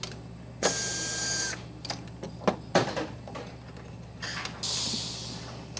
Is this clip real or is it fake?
real